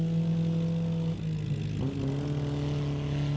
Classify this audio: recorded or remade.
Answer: recorded